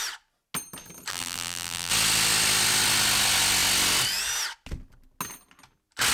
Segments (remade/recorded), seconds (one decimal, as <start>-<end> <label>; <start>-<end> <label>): 0.0-1.1 recorded; 1.1-1.9 remade; 1.9-6.1 recorded